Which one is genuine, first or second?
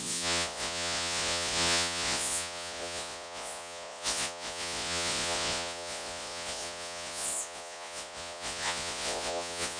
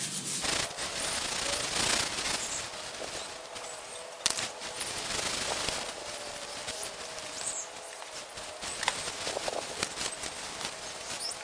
second